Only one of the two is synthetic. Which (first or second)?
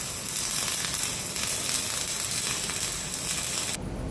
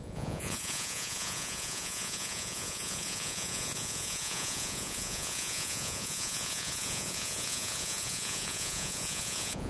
second